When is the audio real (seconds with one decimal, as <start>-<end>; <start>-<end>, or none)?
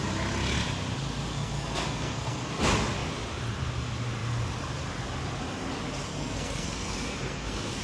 0.0-1.3; 2.5-6.1